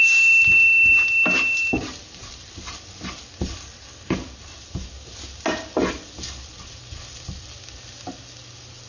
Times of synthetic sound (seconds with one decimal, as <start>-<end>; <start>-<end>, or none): none